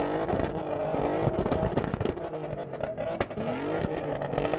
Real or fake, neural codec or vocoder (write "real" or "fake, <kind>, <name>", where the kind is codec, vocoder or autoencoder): real